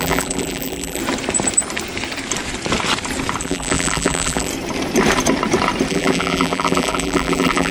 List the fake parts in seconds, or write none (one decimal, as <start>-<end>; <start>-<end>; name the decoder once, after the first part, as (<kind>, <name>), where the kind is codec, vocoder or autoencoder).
0.0-1.0 (vocoder, BigVGAN v2); 3.4-4.5; 5.9-7.7